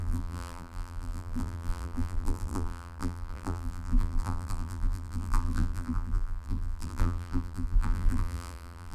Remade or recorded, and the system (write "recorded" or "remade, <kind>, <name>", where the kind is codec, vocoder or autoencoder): remade, vocoder, BigVGAN v2